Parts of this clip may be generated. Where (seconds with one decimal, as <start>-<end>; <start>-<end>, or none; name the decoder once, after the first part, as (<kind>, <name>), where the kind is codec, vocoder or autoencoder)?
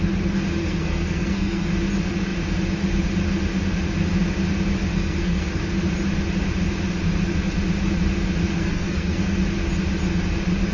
0.6-1.7 (codec, SNAC); 4.9-5.6; 8.5-9.4